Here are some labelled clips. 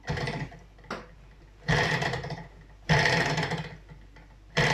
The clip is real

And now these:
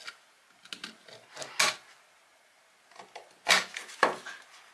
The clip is real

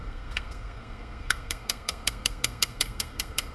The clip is fake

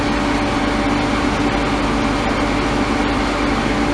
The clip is real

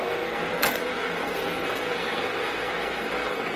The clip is fake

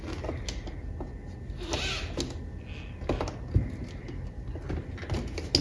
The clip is real